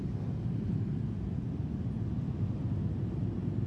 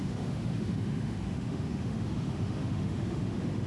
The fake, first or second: second